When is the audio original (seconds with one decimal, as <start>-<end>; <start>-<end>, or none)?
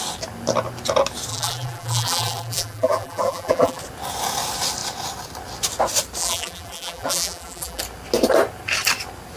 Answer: 0.0-1.3; 3.8-6.2; 7.8-9.4